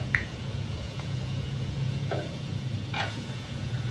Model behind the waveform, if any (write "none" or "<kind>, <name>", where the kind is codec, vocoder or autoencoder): vocoder, Vocos